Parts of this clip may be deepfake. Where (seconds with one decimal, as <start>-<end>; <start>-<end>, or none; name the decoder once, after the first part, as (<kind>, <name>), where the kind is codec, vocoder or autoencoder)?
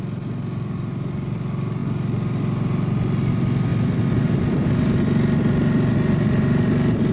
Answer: none